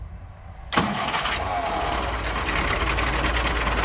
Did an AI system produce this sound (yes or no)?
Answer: no